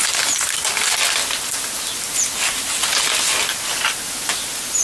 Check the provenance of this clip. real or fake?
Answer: real